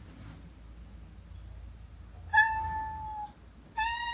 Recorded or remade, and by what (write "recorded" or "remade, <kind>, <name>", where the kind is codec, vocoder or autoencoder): recorded